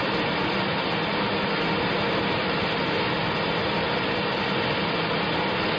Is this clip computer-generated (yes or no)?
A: no